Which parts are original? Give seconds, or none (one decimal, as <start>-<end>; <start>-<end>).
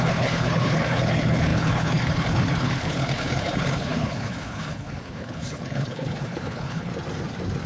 6.9-7.7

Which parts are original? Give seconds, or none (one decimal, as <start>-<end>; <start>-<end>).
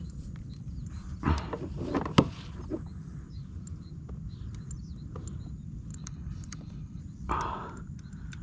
0.0-5.9; 7.0-8.4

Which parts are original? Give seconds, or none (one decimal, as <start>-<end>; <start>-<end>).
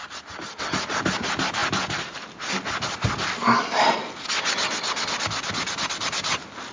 0.0-6.7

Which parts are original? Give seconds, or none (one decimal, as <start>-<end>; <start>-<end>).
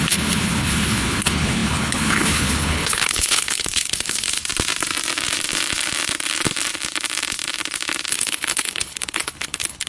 4.4-8.1